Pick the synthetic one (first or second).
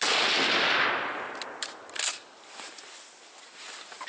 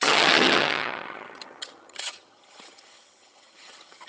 second